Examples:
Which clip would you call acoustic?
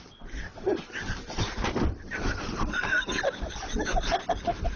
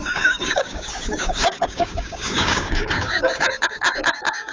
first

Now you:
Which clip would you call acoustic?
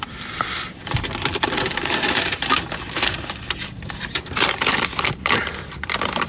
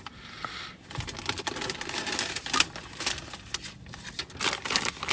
second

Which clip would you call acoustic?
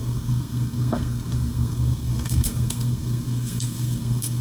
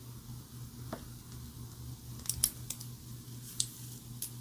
second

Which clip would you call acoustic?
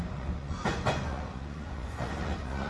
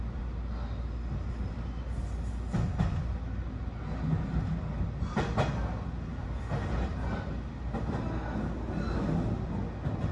second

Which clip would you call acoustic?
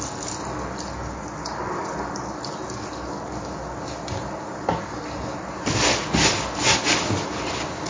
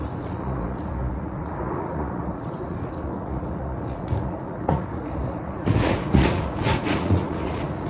first